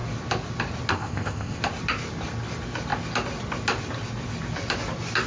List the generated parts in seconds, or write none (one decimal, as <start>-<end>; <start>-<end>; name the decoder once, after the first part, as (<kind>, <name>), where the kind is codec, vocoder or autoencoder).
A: 0.9-1.6 (codec, ZipCodec)